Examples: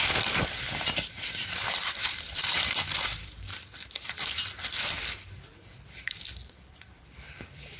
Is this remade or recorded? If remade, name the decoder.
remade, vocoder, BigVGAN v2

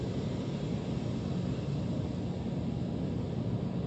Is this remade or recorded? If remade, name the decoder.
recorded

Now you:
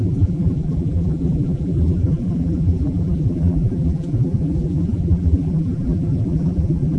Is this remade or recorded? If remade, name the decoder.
remade, vocoder, BigVGAN v2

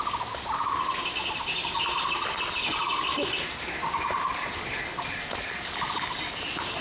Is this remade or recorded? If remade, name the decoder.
recorded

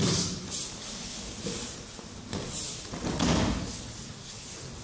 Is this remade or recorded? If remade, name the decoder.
recorded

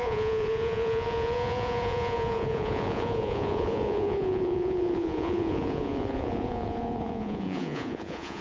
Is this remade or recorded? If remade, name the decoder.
remade, vocoder, Vocos